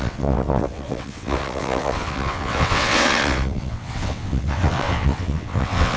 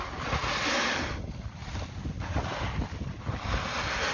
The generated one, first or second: first